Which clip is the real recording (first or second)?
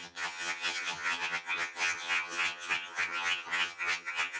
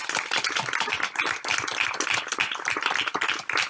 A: second